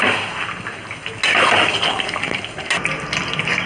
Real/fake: real